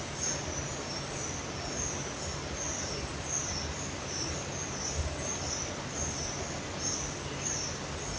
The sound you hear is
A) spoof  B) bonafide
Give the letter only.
B